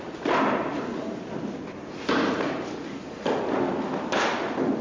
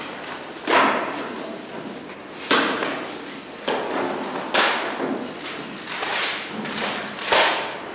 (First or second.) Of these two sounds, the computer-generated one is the first